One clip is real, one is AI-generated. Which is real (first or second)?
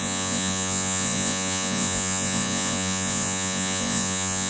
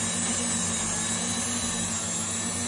second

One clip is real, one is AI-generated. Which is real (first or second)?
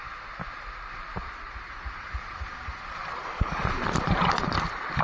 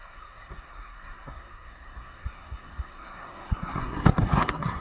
first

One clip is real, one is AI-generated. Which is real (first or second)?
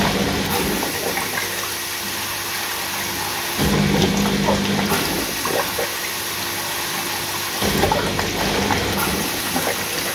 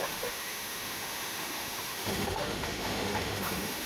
first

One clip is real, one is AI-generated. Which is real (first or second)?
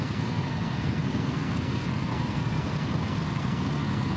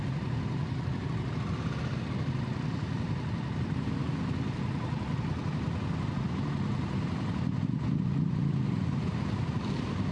second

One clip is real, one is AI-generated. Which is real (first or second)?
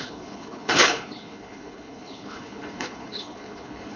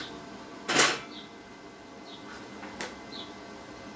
second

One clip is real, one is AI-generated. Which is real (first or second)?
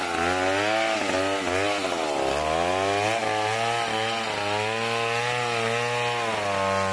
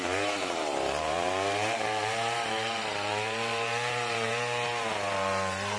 first